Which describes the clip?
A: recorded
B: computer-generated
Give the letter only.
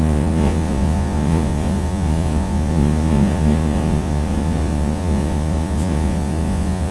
B